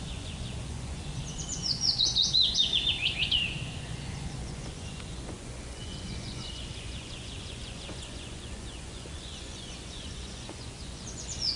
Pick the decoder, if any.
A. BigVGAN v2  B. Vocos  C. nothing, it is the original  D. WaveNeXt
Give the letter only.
B